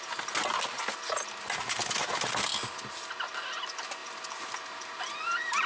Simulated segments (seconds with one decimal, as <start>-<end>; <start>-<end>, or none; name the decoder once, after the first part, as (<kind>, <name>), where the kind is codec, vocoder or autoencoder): none